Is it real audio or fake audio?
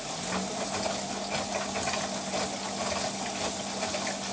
real